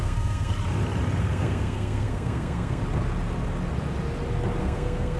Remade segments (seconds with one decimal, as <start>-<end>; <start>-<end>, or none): 0.0-0.5; 1.2-2.8; 4.6-5.2